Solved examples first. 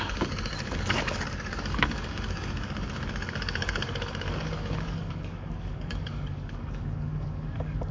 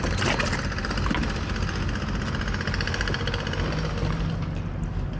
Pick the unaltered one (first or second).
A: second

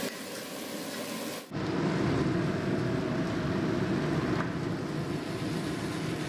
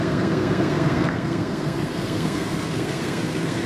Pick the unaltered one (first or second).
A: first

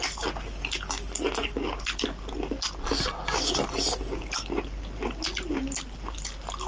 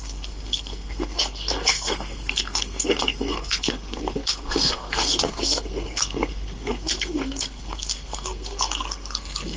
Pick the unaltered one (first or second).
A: first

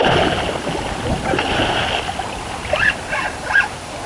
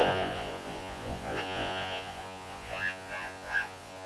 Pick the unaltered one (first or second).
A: first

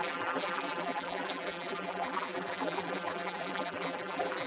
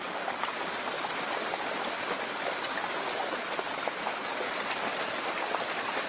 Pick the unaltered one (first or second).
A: second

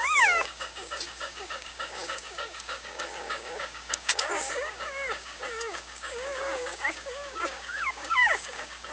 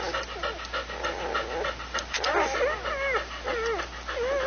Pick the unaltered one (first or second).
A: second